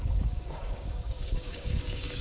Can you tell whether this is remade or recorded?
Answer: remade